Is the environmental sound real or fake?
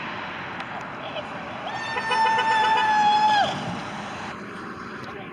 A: real